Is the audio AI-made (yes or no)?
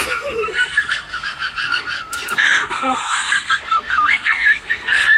yes